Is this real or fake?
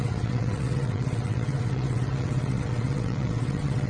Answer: fake